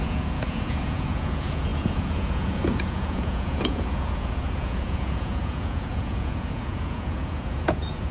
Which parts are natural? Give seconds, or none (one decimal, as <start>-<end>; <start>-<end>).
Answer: none